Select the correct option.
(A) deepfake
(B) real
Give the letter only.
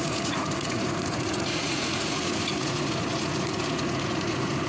A